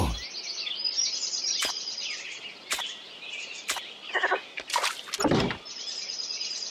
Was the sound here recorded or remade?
recorded